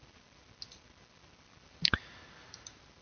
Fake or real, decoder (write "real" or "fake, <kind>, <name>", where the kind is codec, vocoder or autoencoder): real